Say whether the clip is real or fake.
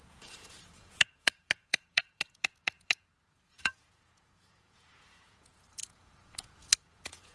fake